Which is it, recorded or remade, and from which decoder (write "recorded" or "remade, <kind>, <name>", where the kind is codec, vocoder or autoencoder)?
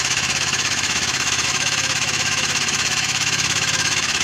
remade, autoencoder, DAC-VAE